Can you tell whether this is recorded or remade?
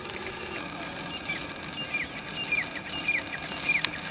recorded